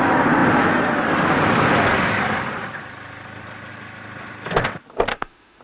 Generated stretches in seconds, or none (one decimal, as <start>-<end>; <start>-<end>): 5.1-5.6